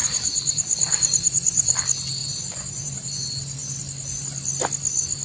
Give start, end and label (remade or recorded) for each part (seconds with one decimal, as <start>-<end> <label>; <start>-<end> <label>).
0.0-1.8 remade; 1.8-2.2 recorded; 2.2-3.1 remade; 3.1-5.2 recorded